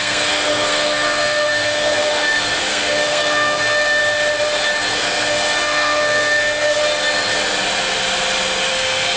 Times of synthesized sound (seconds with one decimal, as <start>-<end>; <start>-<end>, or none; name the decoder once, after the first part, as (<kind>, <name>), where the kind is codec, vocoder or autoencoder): 0.0-4.0 (codec, SNAC); 5.0-6.8; 8.7-9.2